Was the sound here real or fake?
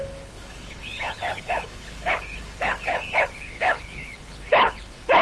fake